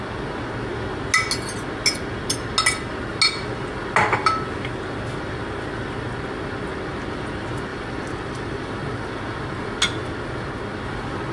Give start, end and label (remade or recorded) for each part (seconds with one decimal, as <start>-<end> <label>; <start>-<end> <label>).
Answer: 0.0-7.7 recorded; 7.7-9.2 remade; 9.2-11.3 recorded